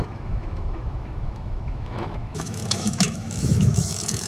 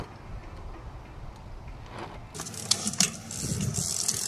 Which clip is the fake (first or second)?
first